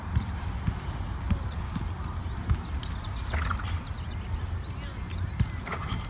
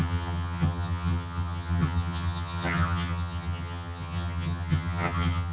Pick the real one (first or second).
first